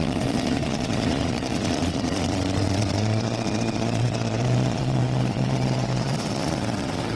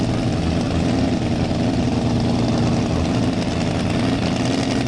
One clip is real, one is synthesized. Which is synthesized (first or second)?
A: first